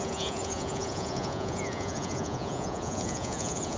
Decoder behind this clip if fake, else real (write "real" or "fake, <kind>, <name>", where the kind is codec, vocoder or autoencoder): fake, vocoder, Vocos